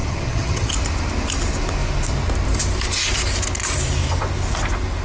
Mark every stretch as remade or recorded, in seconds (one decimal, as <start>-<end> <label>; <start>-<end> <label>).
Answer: 0.0-0.7 remade; 0.7-5.0 recorded